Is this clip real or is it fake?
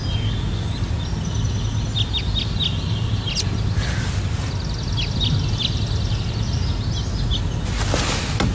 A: real